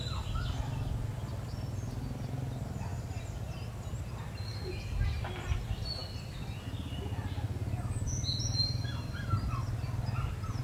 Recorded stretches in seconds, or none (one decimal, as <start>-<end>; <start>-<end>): 0.0-10.6